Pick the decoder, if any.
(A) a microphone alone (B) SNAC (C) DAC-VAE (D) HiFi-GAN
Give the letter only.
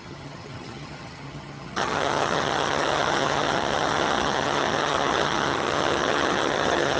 D